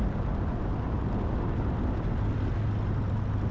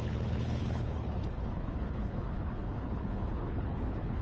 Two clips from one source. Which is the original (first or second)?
first